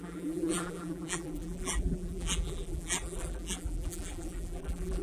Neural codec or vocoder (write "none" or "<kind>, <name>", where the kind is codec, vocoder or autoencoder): vocoder, BigVGAN v2